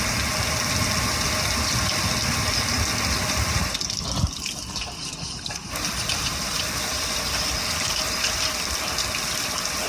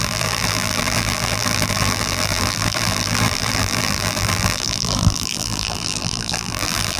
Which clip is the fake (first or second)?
second